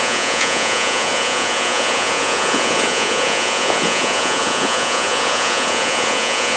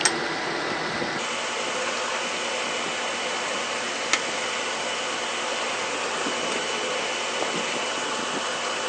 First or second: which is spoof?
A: first